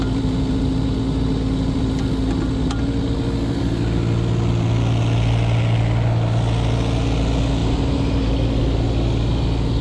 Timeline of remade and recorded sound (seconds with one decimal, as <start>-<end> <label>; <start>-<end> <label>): 0.0-7.6 recorded; 7.6-8.3 remade; 8.3-9.8 recorded

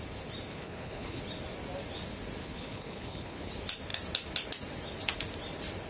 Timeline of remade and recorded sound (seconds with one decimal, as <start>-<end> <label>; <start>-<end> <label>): 0.0-0.5 recorded; 0.5-1.2 remade; 1.2-2.4 recorded; 2.4-3.5 remade; 3.5-5.9 recorded

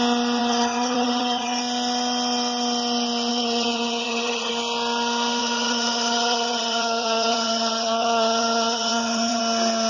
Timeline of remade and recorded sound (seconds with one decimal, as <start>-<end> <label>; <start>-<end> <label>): 0.0-0.4 recorded; 0.4-1.6 remade; 1.6-3.3 recorded; 3.3-4.5 remade; 4.5-5.4 recorded; 5.4-9.4 remade; 9.4-9.9 recorded

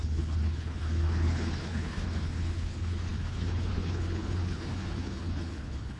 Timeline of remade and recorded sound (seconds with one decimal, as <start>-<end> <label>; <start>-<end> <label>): 0.0-6.0 remade